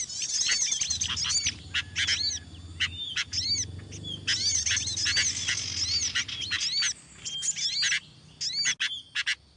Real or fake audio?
real